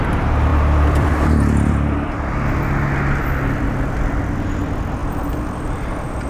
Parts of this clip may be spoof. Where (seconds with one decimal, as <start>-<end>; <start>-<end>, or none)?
0.5-2.3